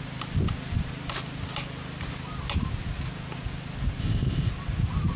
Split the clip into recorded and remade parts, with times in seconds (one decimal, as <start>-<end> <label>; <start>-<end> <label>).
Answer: 0.0-4.0 recorded; 4.0-4.5 remade; 4.5-5.2 recorded